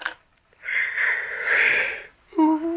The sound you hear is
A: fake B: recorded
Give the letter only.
B